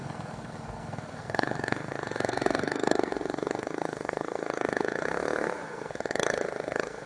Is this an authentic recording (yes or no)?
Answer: no